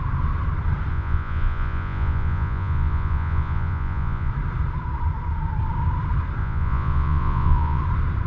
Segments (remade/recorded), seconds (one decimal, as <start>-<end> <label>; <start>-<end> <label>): 0.0-0.9 recorded; 0.9-4.3 remade; 4.3-6.4 recorded; 6.4-7.8 remade; 7.8-8.3 recorded